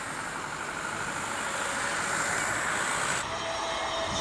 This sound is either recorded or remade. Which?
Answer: recorded